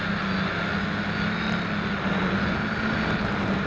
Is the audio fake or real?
real